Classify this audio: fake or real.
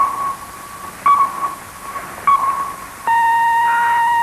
real